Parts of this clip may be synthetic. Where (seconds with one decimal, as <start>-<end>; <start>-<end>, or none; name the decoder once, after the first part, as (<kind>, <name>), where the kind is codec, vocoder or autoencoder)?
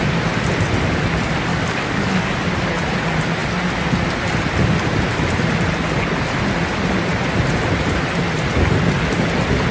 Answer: 1.5-2.3 (codec, DAC)